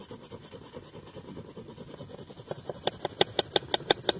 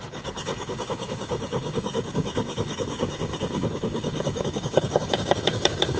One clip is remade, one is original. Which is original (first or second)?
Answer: first